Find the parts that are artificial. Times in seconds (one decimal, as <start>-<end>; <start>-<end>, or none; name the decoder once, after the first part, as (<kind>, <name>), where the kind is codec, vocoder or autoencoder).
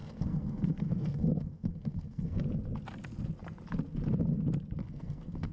0.0-2.4 (codec, SNAC); 4.8-5.5